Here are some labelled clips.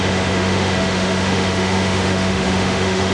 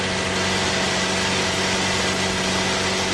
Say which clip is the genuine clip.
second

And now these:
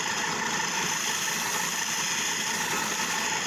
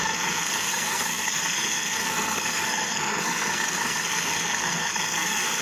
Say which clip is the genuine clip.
first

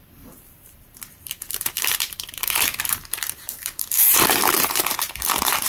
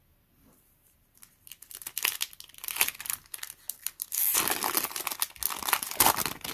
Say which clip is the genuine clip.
second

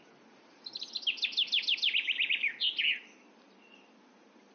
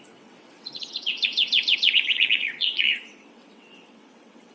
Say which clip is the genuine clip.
first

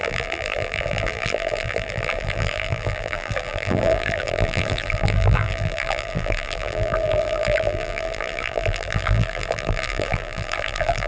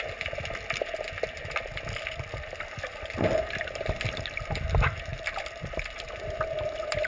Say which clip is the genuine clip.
second